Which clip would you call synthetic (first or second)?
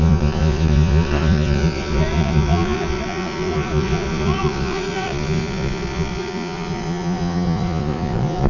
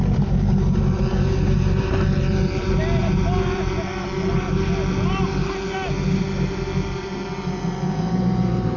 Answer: first